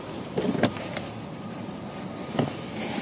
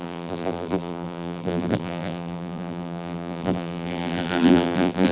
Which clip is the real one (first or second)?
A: first